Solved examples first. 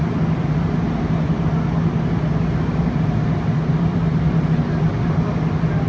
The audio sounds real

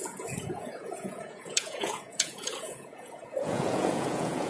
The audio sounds fake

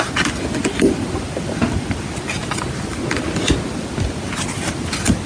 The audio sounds real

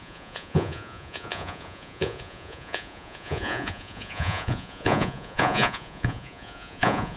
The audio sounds fake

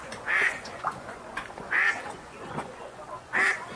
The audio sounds fake